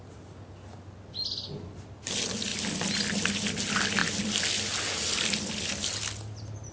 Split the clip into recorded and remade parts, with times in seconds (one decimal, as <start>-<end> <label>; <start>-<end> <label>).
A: 0.0-6.7 recorded